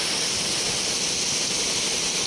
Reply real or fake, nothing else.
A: real